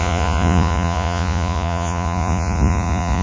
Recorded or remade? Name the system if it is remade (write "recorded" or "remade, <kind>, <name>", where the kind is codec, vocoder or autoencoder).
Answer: remade, vocoder, Vocos